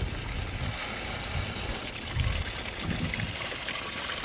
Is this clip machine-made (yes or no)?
no